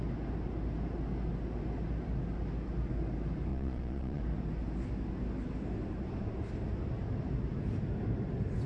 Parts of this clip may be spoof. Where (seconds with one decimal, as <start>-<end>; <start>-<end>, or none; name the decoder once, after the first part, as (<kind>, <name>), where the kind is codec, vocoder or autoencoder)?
3.5-4.2 (vocoder, Vocos)